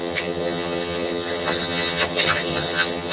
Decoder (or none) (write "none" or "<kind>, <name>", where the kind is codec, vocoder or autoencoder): vocoder, HiFi-GAN